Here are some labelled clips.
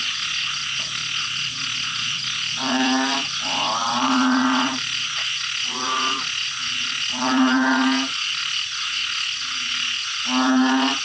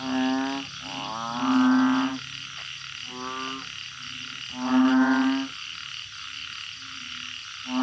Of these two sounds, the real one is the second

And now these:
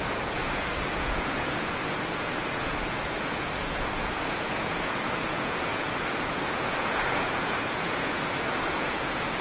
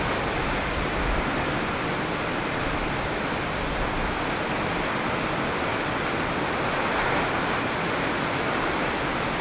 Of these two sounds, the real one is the second